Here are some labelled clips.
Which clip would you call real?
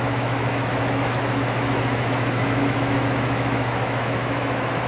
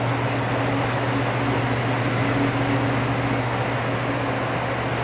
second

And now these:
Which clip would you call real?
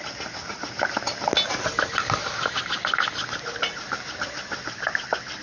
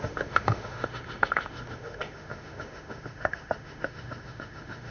first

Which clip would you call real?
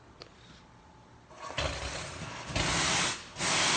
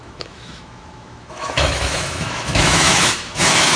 first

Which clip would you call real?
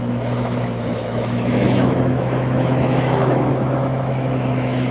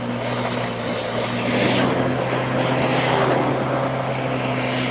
second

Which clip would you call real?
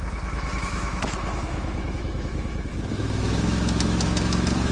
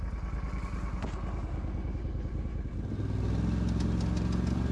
second